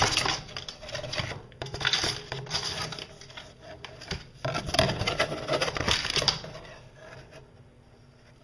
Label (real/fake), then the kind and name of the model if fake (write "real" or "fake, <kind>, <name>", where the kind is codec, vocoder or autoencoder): real